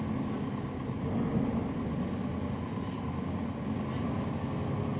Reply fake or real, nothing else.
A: real